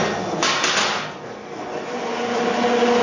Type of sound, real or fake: real